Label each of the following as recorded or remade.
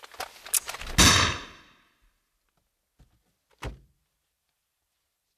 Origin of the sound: recorded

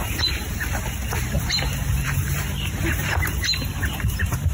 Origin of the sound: remade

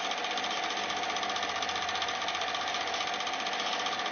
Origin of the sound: recorded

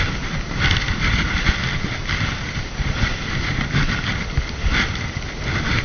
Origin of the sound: recorded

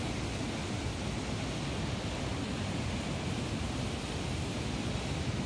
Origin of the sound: recorded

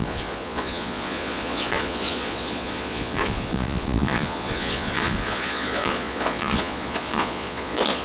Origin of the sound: remade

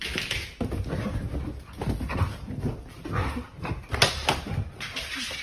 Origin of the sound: recorded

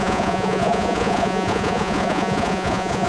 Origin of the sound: remade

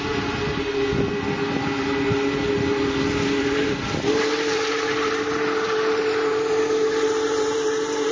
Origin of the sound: recorded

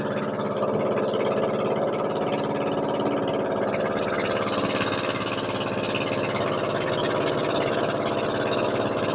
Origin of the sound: recorded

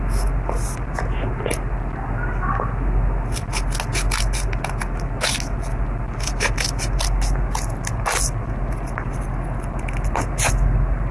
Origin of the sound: recorded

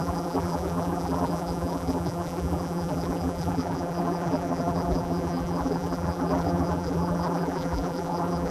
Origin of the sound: remade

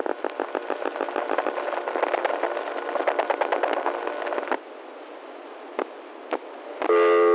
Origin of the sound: recorded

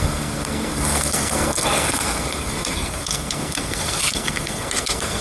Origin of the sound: remade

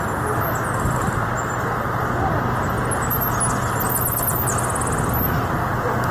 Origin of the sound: recorded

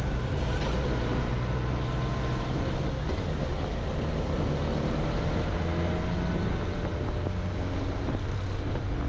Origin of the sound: recorded